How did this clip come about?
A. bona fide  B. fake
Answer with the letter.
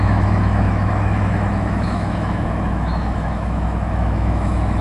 B